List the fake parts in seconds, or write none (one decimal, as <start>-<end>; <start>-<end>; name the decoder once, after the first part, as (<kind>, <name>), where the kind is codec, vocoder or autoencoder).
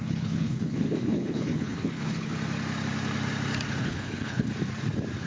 0.0-2.3 (codec, HILCodec); 3.8-4.5